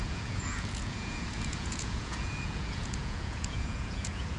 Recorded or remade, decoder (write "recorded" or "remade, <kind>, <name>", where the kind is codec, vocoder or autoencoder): remade, vocoder, Vocos